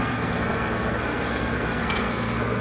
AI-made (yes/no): yes